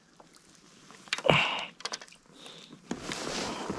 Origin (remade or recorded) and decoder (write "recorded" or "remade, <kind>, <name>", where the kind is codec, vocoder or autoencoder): remade, vocoder, BigVGAN v2